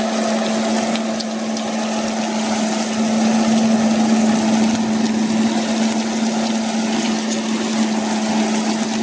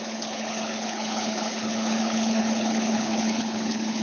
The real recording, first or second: first